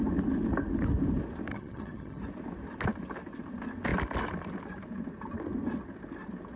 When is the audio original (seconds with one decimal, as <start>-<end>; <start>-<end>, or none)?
0.0-1.5; 2.2-6.6